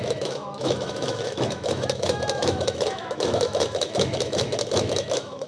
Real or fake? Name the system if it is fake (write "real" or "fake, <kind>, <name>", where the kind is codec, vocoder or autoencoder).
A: fake, autoencoder, DAC-VAE